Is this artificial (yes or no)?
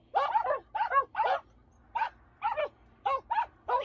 no